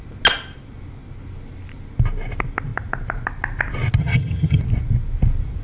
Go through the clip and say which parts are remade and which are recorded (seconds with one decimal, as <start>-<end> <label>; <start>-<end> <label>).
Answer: 0.0-4.0 recorded; 4.0-4.6 remade; 4.6-5.6 recorded